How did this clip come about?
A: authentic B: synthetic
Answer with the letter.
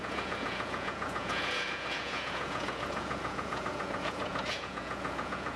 B